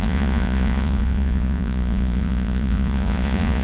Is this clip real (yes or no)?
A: no